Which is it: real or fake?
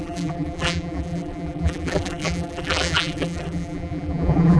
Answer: fake